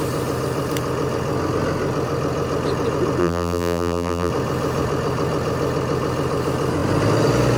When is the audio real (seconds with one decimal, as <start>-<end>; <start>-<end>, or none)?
0.0-3.2; 4.3-7.6